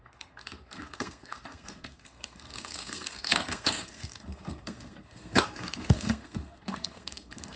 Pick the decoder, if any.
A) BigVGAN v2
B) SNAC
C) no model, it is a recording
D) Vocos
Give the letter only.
B